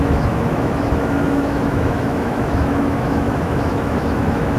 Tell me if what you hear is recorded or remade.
remade